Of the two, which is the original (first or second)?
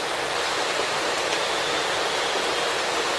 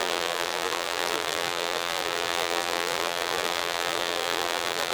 first